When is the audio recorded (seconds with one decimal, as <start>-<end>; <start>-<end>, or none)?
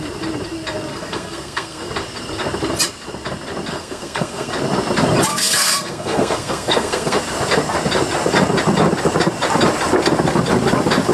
0.0-0.9; 1.9-3.7; 4.5-5.3; 7.2-11.1